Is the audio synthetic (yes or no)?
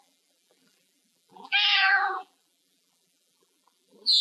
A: yes